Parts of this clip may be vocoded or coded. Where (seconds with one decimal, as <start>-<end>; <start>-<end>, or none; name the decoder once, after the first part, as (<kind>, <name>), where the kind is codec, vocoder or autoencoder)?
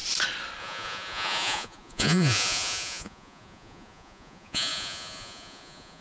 0.6-6.0 (vocoder, Vocos)